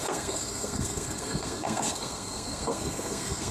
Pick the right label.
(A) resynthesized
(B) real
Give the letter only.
A